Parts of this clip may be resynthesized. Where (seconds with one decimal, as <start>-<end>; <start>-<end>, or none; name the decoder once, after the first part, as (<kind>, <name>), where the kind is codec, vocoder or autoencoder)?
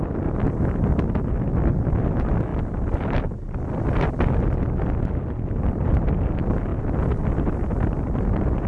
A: 2.5-3.9 (vocoder, BigVGAN v2); 6.7-7.5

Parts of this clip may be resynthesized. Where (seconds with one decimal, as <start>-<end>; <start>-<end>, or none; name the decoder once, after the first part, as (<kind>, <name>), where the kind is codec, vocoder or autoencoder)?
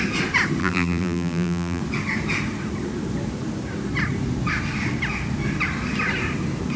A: 0.6-1.8 (vocoder, BigVGAN v2)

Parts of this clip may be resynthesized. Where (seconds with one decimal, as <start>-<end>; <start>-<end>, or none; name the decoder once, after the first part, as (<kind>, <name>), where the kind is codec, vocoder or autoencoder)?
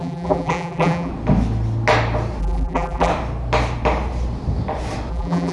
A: 0.0-1.1 (vocoder, BigVGAN v2); 2.4-3.1; 5.1-5.5